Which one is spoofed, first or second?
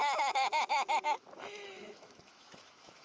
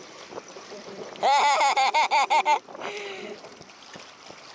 first